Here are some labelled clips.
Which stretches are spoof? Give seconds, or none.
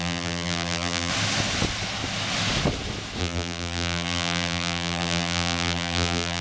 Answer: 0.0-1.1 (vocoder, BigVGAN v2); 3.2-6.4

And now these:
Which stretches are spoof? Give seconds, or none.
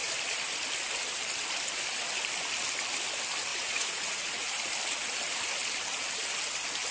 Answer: 3.5-4.7 (vocoder, Vocos)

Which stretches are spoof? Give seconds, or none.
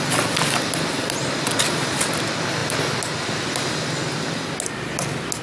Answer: none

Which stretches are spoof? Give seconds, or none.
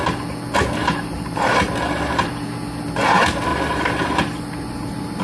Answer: 0.8-2.3 (vocoder, BigVGAN v2); 3.5-5.2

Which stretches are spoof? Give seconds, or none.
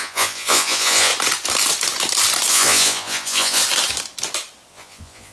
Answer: 0.0-1.1 (vocoder, Vocos); 2.5-3.6; 4.7-5.3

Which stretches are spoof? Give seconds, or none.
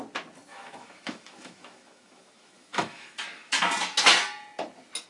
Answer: 0.5-3.6 (autoencoder, DAC-VAE)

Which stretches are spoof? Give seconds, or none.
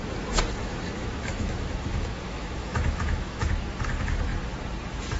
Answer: 0.6-3.5 (autoencoder, DAC-VAE)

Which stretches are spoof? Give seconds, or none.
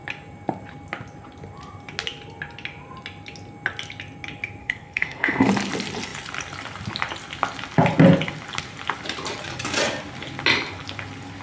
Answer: 4.6-5.5 (codec, SNAC)